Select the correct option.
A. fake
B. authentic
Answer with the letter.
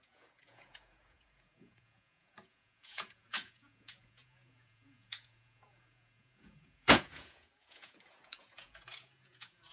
A